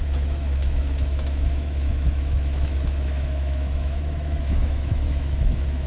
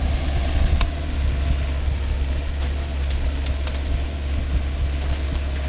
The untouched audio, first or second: second